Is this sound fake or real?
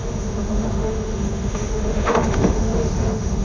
fake